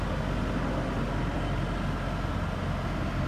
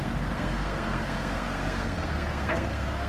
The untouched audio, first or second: first